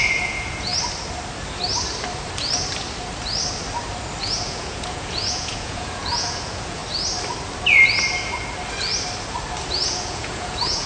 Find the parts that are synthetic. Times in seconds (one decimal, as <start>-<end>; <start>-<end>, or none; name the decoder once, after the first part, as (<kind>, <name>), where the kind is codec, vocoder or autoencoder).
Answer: 0.0-0.7 (vocoder, Vocos); 4.2-6.8; 9.7-10.9